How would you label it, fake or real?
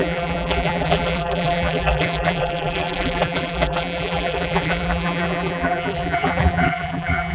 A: fake